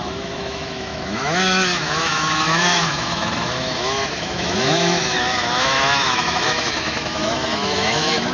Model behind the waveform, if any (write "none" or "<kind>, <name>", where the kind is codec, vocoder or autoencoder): autoencoder, DAC-VAE